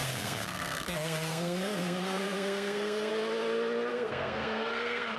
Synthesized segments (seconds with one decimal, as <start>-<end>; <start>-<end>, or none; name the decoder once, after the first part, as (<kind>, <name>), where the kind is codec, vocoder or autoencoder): 0.0-3.1 (codec, SNAC); 3.9-5.2